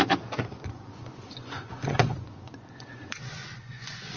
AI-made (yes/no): yes